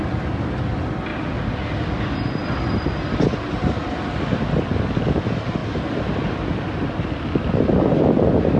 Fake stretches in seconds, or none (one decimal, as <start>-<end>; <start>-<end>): none